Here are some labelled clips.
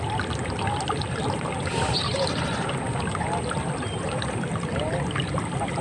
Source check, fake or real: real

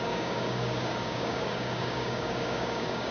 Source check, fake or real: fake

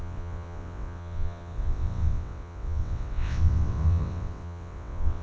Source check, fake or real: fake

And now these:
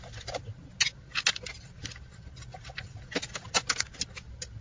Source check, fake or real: real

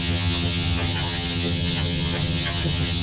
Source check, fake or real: fake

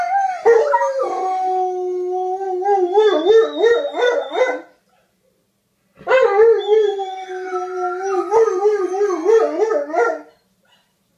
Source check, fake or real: real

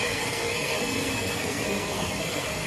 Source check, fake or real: fake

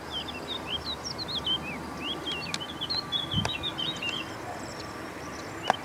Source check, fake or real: real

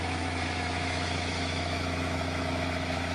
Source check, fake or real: fake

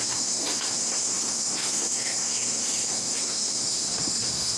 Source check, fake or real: fake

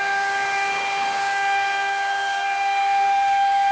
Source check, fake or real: fake